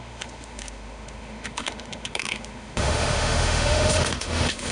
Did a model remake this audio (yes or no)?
yes